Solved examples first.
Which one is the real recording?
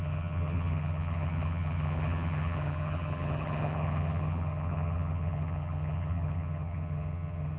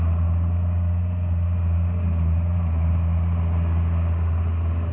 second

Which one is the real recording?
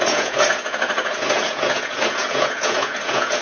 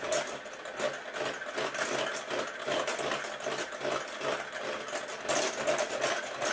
second